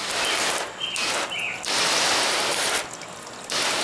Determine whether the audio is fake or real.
real